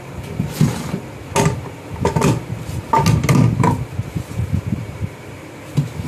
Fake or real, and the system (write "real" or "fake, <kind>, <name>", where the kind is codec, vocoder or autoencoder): real